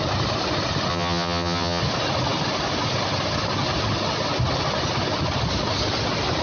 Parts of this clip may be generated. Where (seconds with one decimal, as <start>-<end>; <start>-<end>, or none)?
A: 0.9-1.8